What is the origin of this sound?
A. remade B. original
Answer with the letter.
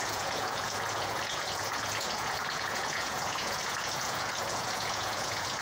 A